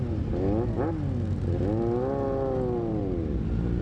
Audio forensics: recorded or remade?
recorded